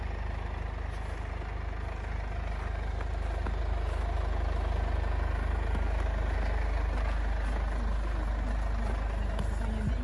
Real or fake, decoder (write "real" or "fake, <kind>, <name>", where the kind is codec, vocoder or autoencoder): real